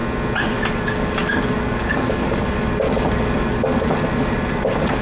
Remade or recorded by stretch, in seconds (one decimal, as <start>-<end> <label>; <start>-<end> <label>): 0.0-0.7 recorded; 0.7-5.0 remade